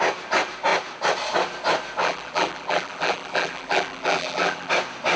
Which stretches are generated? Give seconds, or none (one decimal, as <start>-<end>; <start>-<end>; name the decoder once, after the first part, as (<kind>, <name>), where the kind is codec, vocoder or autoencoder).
2.0-4.7 (vocoder, BigVGAN v2)